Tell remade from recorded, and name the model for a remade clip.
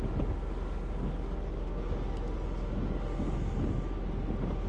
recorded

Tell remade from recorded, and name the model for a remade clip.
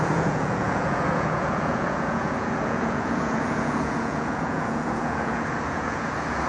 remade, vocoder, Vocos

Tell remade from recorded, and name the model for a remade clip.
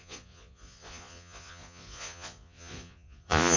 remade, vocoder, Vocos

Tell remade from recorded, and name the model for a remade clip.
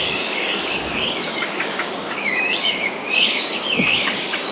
remade, codec, DAC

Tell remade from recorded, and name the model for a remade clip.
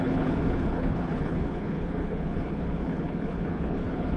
remade, codec, HILCodec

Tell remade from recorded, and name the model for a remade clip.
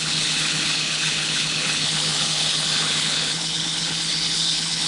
remade, codec, HILCodec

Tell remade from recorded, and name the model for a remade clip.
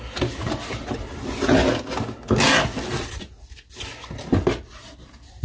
recorded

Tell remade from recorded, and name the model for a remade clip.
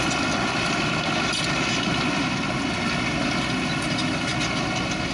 recorded